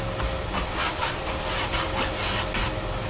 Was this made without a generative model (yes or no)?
yes